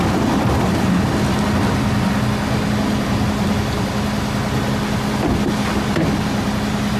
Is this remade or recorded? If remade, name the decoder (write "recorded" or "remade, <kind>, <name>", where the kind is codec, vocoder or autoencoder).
recorded